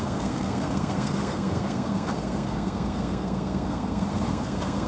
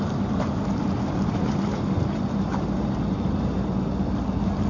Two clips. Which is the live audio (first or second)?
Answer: second